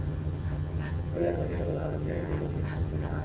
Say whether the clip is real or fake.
fake